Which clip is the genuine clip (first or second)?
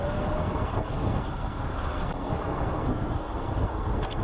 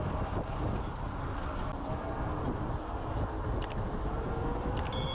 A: second